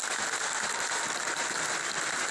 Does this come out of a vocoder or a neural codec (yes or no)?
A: no